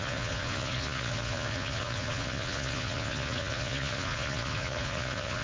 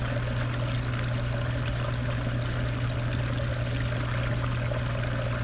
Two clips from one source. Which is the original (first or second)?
second